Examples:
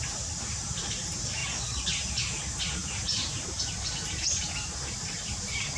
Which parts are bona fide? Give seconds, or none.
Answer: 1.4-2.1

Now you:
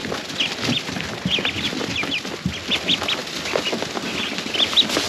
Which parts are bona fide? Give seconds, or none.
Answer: 0.0-5.1

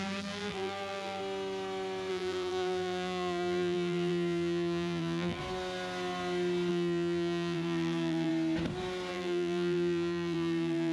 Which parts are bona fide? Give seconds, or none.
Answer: 1.2-2.1; 5.4-6.7; 8.3-9.1

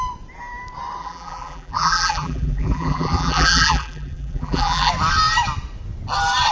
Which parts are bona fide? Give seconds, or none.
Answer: 0.0-1.0; 4.9-6.5

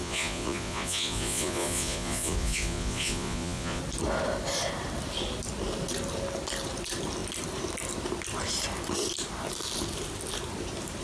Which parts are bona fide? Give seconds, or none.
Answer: 3.8-11.0